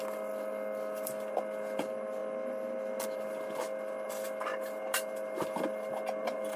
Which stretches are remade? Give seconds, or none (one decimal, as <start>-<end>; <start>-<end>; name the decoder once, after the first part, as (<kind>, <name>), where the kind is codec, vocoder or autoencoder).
none